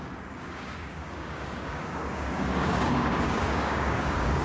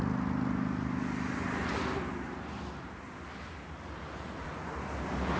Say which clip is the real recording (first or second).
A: second